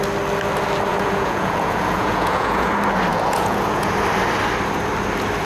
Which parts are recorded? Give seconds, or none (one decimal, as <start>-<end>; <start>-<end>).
0.0-0.9; 2.7-3.1; 3.9-5.4